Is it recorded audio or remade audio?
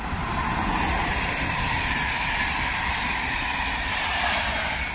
remade